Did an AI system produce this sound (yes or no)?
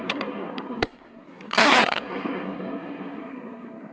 yes